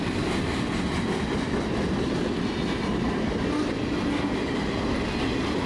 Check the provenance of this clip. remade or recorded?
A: recorded